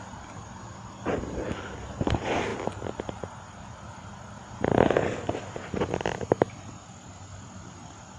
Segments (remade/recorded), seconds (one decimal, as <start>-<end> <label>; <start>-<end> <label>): 0.0-8.2 recorded